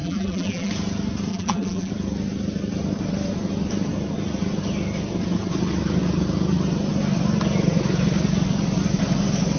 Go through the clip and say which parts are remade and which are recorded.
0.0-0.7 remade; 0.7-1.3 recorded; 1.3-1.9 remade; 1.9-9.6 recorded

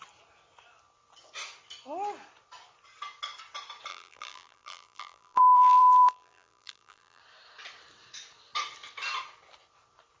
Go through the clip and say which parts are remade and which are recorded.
0.0-3.9 recorded; 3.9-7.2 remade; 7.2-10.2 recorded

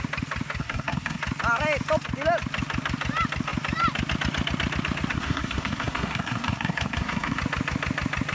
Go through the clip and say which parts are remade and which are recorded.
0.0-0.6 recorded; 0.6-1.2 remade; 1.2-5.1 recorded; 5.1-7.4 remade; 7.4-8.3 recorded

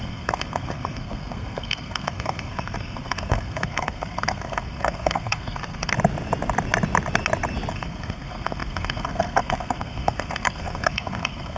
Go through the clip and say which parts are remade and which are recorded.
0.0-5.9 remade; 5.9-7.7 recorded; 7.7-11.6 remade

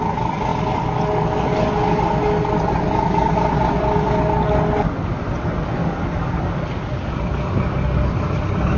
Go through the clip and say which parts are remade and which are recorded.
0.0-5.8 recorded; 5.8-6.6 remade; 6.6-8.8 recorded